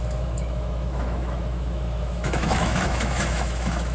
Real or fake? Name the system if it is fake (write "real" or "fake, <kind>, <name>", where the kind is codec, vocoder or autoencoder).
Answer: fake, autoencoder, DAC-VAE